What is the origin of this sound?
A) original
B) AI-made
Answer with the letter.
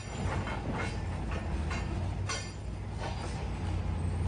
A